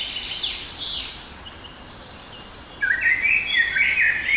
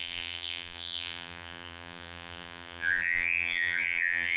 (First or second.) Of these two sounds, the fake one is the second